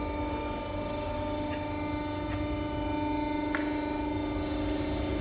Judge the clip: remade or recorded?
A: recorded